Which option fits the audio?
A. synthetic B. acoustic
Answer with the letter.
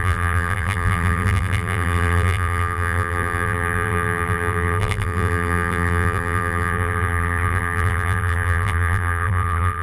A